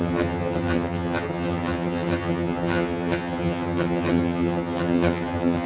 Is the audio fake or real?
fake